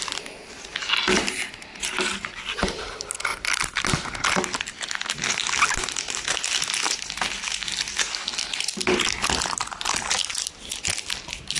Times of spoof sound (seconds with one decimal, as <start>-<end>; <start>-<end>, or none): none